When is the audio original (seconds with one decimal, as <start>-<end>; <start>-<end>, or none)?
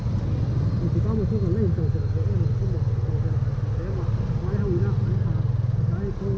0.0-6.4